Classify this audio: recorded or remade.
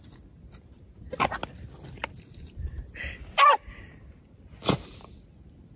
recorded